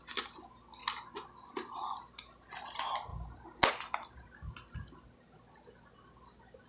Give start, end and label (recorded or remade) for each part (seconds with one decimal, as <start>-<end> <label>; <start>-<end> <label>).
0.0-6.7 recorded